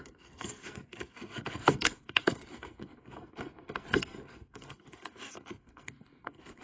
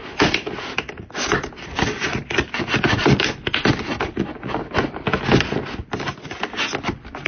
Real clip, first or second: second